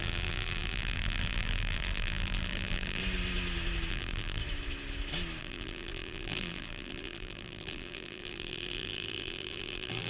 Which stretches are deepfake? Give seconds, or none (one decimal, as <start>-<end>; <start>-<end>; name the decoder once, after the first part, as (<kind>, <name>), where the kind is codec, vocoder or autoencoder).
0.0-3.0 (vocoder, BigVGAN v2); 3.9-4.4; 5.4-10.1